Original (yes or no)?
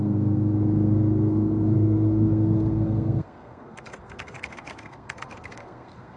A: no